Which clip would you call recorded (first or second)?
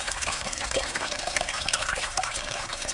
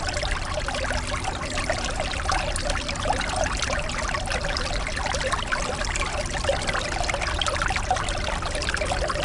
second